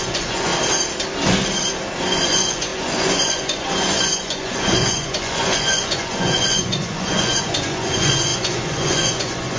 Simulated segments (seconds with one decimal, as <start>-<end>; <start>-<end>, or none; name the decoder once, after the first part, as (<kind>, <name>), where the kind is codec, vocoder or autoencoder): 0.0-0.5 (vocoder, Vocos); 2.0-9.6

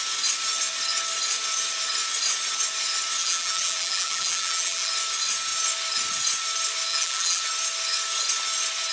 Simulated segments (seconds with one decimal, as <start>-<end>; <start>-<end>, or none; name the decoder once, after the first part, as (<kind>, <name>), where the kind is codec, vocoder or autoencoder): 3.2-4.9 (vocoder, BigVGAN v2); 6.9-7.4

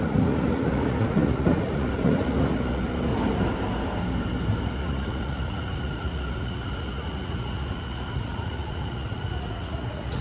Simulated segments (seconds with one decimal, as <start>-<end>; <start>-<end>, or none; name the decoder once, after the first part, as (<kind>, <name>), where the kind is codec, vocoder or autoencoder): 0.0-3.1 (vocoder, Vocos); 4.6-10.2

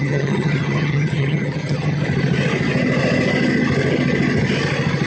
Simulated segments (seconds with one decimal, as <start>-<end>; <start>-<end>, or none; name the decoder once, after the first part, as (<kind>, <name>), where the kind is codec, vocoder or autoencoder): 0.0-2.0 (vocoder, HiFi-GAN)

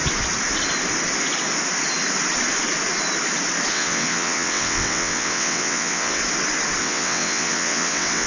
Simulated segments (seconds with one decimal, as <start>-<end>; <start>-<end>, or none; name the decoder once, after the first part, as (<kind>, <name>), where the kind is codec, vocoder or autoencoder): 3.7-6.2 (vocoder, WaveNeXt); 6.8-8.3

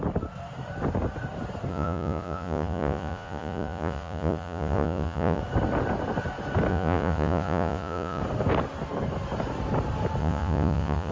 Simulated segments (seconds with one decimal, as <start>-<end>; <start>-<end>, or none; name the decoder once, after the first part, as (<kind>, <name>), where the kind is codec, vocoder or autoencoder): 1.7-5.4 (vocoder, Vocos); 6.7-8.2; 10.2-11.1

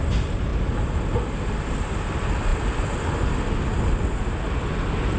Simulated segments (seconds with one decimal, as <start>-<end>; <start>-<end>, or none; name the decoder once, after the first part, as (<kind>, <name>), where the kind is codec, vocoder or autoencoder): none